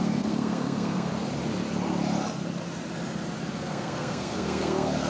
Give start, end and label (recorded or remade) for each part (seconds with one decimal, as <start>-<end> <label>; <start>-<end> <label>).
0.0-1.1 remade; 1.1-3.6 recorded; 3.6-5.1 remade